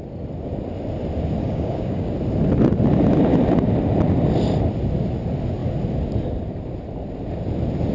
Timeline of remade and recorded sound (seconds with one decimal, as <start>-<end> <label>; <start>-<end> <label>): 0.0-1.4 recorded; 1.4-2.1 remade; 2.1-7.9 recorded